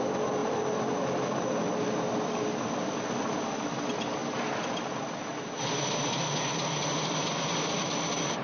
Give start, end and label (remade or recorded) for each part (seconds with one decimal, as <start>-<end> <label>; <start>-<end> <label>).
0.0-8.4 recorded